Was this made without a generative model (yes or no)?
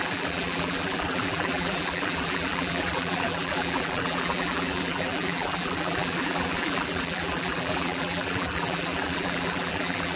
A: no